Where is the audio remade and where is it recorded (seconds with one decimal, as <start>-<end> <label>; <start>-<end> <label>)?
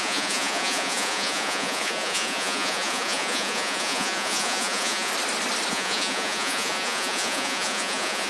0.0-5.1 remade; 5.1-5.7 recorded; 5.7-8.3 remade